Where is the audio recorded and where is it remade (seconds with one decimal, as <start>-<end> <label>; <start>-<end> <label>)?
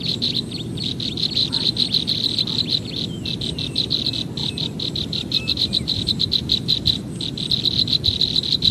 0.0-4.4 recorded; 4.4-6.3 remade; 6.3-8.7 recorded